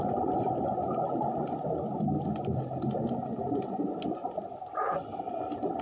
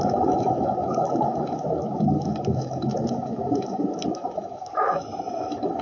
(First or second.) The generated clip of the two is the second